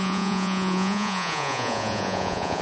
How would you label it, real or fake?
fake